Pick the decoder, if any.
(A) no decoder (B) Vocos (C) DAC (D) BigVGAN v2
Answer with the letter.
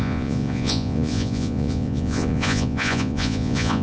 B